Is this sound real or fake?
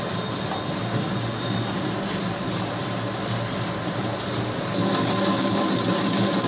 real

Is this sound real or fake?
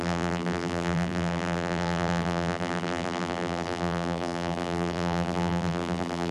fake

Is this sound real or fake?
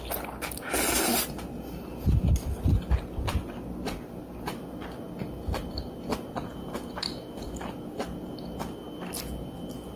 real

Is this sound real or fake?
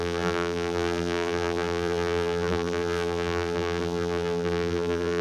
fake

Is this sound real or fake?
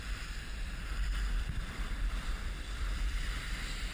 fake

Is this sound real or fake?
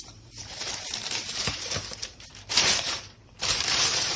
fake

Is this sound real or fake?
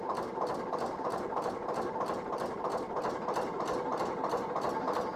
real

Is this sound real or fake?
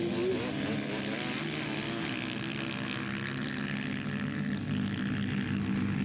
real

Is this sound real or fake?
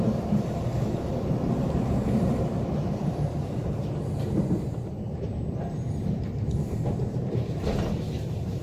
fake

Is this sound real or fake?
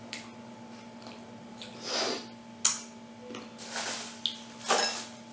real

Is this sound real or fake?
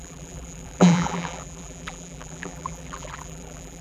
fake